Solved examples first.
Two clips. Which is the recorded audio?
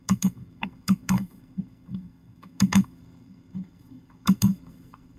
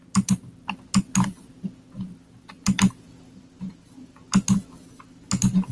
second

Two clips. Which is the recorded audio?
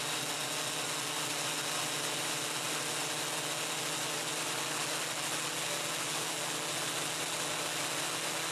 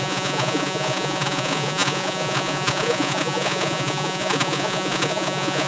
first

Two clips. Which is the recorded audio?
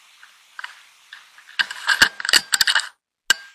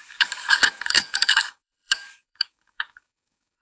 first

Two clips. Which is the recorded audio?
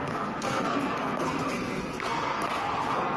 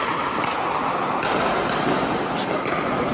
second